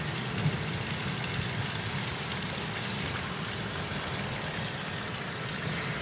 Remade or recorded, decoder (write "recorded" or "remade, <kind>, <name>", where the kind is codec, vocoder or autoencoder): recorded